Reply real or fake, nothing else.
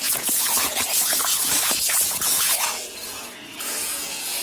fake